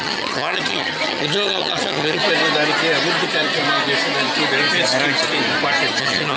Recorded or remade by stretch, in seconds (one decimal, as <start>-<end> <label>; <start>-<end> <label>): 0.0-2.2 remade; 2.2-6.0 recorded; 6.0-6.4 remade